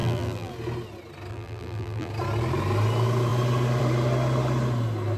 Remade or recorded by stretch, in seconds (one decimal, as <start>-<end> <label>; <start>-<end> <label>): 0.0-0.5 remade; 0.5-1.3 recorded; 1.3-2.1 remade; 2.1-5.2 recorded